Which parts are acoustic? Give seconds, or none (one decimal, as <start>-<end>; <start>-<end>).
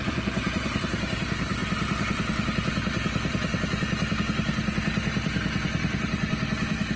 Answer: 0.8-7.0